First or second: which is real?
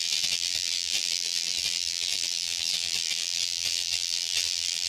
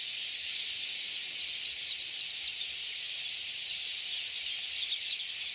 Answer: second